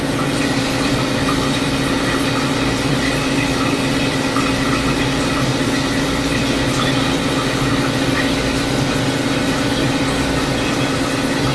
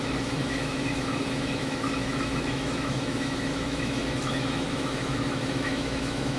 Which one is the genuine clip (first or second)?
first